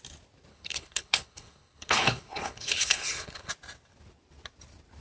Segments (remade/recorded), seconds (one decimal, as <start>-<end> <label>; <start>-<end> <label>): 0.0-0.5 recorded; 0.5-3.5 remade; 3.5-5.0 recorded